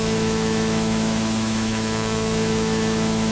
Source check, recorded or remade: remade